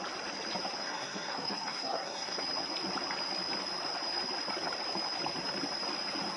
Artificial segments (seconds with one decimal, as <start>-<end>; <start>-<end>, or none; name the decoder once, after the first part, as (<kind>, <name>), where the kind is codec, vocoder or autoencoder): 0.8-2.4 (codec, SNAC)